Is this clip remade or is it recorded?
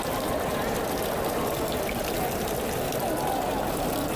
recorded